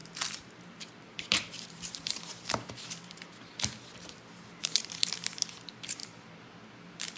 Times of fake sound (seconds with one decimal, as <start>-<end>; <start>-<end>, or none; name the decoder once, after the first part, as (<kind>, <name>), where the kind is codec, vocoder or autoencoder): 0.0-6.0 (vocoder, BigVGAN v2); 6.7-7.2